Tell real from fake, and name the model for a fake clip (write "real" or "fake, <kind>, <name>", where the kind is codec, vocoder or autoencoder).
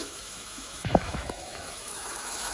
fake, autoencoder, DAC-VAE